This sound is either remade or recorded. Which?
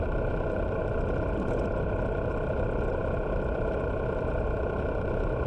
recorded